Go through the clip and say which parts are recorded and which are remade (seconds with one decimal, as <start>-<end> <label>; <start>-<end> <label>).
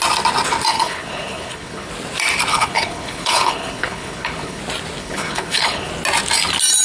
0.0-0.7 recorded; 0.7-1.9 remade; 1.9-2.5 recorded; 2.5-4.6 remade; 4.6-5.0 recorded; 5.0-5.9 remade; 5.9-6.8 recorded